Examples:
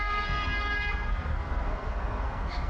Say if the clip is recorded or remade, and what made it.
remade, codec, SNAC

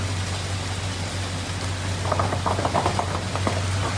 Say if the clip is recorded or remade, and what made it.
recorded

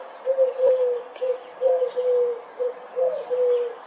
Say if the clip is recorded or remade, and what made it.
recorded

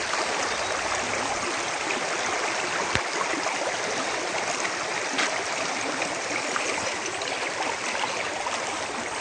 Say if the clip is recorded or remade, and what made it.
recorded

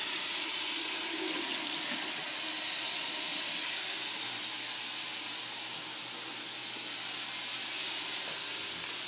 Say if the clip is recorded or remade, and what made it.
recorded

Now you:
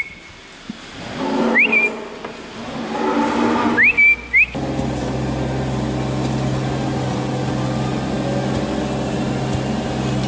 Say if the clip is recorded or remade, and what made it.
recorded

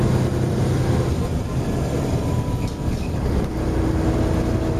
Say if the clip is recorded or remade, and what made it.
recorded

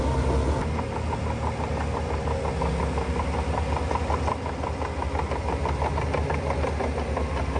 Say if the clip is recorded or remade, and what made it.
recorded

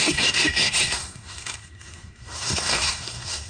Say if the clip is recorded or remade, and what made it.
remade, codec, SNAC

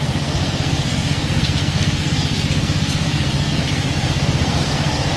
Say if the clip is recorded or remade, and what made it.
remade, codec, SNAC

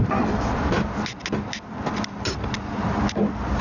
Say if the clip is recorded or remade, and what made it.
recorded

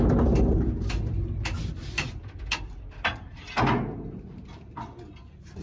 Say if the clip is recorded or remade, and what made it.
recorded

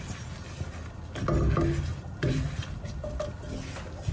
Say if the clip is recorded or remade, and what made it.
recorded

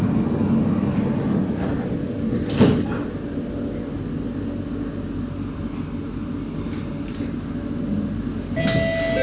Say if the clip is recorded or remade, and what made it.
recorded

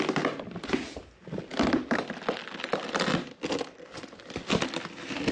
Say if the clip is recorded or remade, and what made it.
recorded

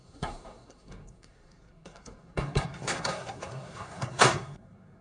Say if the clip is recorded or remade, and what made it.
remade, codec, SNAC